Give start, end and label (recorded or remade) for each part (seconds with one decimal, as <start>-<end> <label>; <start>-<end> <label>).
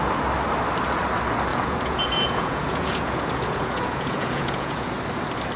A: 0.0-1.5 recorded; 1.5-4.9 remade; 4.9-5.6 recorded